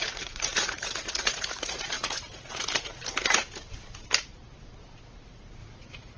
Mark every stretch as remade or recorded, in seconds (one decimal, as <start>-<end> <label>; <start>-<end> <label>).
0.0-3.0 remade; 3.0-5.6 recorded; 5.6-6.2 remade